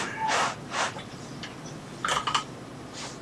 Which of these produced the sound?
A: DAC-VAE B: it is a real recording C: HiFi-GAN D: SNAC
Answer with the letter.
B